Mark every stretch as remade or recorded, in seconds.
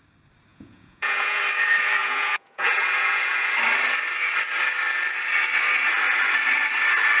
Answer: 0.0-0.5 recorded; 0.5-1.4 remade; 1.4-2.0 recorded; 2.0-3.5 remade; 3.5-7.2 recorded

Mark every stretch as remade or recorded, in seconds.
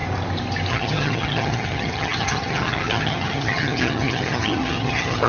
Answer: 0.0-0.7 recorded; 0.7-5.3 remade